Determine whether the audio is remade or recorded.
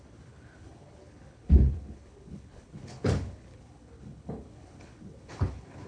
remade